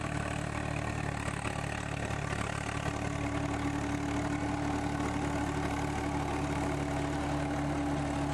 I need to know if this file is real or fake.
real